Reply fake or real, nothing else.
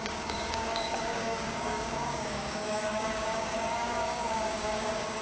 fake